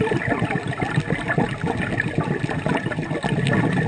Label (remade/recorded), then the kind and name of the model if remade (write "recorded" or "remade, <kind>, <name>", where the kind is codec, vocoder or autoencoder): recorded